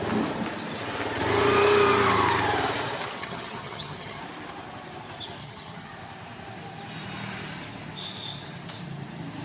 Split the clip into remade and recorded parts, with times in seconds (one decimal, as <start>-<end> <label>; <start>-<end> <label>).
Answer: 0.0-3.2 recorded; 3.2-4.2 remade; 4.2-5.4 recorded; 5.4-5.9 remade; 5.9-9.4 recorded